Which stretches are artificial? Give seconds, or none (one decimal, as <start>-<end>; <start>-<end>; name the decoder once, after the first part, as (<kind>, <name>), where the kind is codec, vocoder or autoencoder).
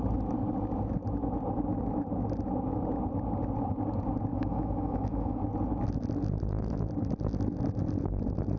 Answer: 4.3-5.4 (autoencoder, DAC-VAE)